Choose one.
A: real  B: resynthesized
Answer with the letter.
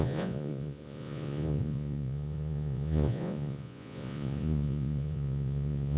B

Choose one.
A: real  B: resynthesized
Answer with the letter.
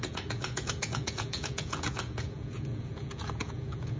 B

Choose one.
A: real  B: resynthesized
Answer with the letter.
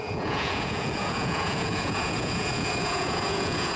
B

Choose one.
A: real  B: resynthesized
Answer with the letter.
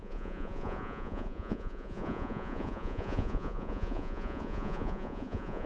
B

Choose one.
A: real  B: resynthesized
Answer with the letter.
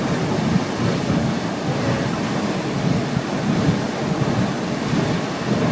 A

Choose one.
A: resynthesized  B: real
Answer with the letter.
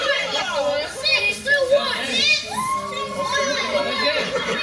B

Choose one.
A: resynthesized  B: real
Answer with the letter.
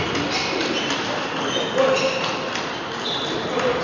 B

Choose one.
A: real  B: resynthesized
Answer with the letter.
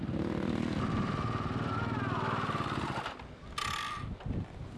A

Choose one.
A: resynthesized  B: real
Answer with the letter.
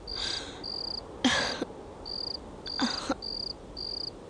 B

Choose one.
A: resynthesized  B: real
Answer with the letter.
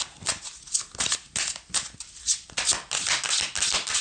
B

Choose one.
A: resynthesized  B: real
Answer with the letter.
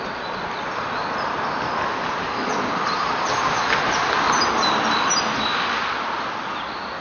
B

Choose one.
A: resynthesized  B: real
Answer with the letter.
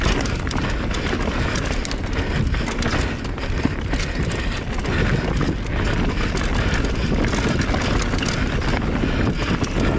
B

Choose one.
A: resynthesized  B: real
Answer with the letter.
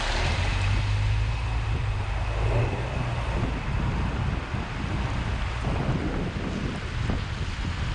B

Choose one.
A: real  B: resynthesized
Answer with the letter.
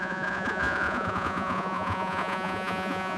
B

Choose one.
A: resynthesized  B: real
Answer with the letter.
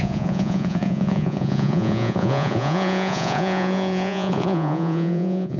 A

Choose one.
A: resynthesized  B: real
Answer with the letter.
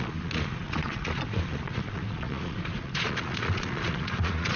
A